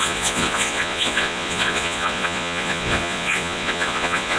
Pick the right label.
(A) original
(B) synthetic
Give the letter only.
B